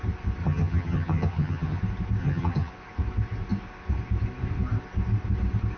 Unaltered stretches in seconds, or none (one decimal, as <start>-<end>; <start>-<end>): 0.0-0.4; 1.8-2.2; 2.7-5.8

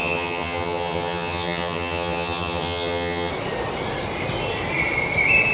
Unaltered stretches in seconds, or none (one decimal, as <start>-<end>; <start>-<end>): 3.3-5.5

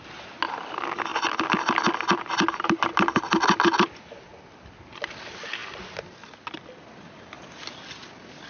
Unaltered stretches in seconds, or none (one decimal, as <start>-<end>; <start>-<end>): 0.0-8.5

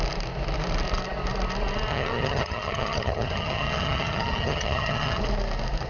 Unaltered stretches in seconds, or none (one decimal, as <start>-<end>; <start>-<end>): 0.0-1.9; 5.2-5.9

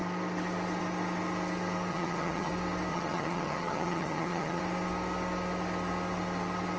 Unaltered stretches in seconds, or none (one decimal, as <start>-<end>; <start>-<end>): 0.0-1.9; 2.5-2.9; 4.6-6.8

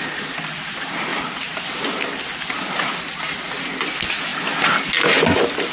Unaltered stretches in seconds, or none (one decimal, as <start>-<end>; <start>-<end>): 0.0-5.7

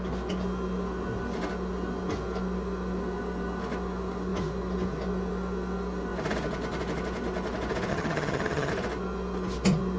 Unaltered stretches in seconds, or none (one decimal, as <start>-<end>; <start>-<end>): 0.0-7.9; 8.7-10.0

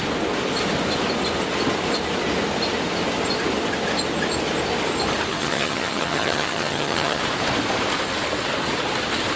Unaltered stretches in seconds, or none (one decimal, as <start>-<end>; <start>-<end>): 0.0-5.3; 7.2-9.4